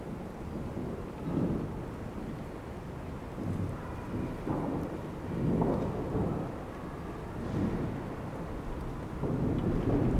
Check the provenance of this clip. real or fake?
real